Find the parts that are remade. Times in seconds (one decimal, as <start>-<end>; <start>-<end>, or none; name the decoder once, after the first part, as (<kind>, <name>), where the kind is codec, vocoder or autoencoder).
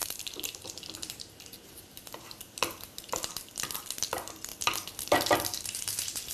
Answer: 0.0-3.3 (vocoder, BigVGAN v2); 4.5-6.3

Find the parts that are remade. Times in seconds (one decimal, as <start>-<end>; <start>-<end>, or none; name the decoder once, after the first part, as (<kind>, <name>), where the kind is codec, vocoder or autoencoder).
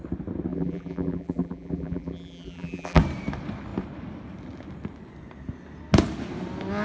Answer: 0.5-3.0 (vocoder, BigVGAN v2)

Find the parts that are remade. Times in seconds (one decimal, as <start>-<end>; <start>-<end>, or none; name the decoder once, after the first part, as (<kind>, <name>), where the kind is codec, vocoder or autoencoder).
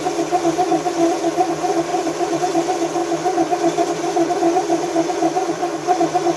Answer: 1.9-2.4 (vocoder, BigVGAN v2); 3.0-6.4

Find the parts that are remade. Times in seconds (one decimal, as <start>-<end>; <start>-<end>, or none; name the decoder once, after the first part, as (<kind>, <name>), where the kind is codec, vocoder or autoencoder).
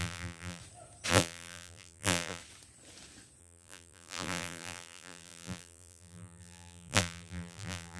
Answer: 0.0-0.6 (vocoder, BigVGAN v2); 1.1-2.4; 3.4-8.0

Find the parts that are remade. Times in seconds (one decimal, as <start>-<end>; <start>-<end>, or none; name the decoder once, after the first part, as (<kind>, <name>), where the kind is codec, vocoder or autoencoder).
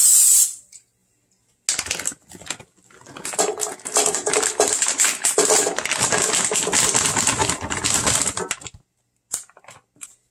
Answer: none